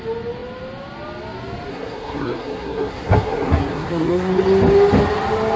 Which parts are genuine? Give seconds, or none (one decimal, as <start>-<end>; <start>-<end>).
0.0-1.7; 4.3-5.6